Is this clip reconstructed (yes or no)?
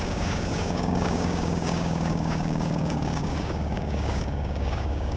yes